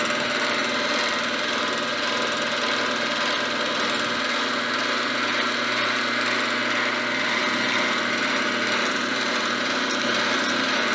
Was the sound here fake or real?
real